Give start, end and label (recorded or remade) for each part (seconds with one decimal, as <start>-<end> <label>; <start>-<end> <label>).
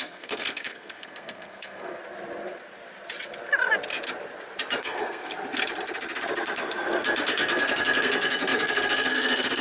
0.0-2.0 remade; 2.0-4.8 recorded; 4.8-5.3 remade; 5.3-7.2 recorded; 7.2-9.6 remade